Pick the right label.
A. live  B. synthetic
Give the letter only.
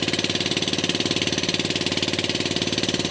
A